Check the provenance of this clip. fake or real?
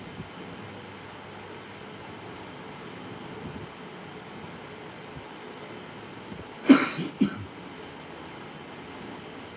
real